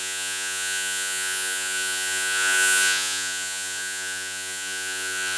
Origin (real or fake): fake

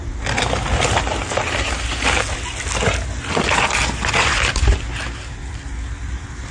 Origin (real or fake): real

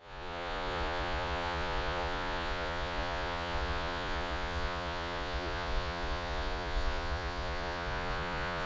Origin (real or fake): fake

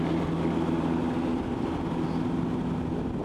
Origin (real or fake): real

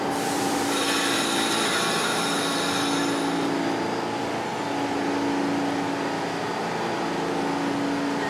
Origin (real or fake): real